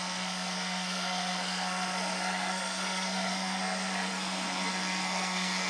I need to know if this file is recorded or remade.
remade